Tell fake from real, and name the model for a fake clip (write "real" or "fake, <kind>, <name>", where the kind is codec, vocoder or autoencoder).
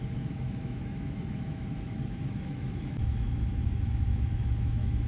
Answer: fake, autoencoder, DAC-VAE